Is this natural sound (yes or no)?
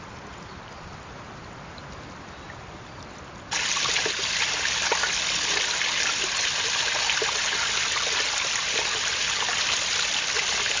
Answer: yes